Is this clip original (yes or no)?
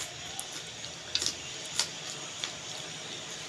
yes